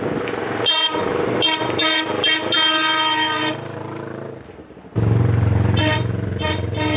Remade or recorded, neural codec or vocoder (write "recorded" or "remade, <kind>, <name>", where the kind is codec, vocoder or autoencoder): remade, vocoder, BigVGAN v2